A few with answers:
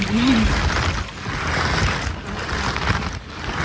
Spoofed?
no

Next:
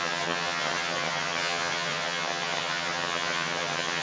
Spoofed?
yes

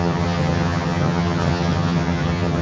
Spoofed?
yes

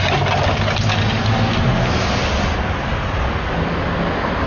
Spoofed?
no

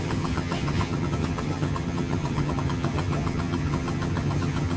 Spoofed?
yes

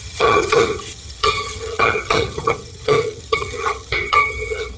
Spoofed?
yes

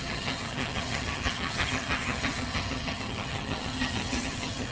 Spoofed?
yes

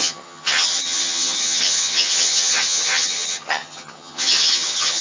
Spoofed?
yes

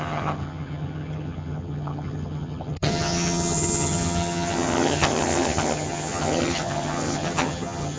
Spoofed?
yes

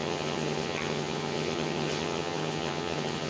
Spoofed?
yes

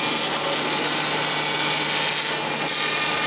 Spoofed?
no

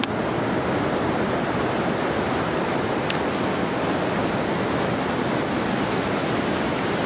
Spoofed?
no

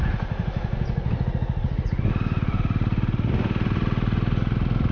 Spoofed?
no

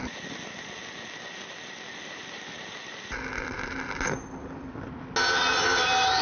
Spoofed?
no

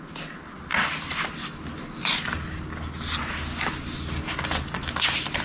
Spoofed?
no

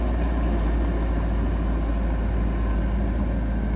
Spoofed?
no